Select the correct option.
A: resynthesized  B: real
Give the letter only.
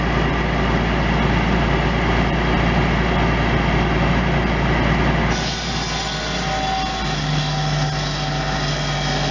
B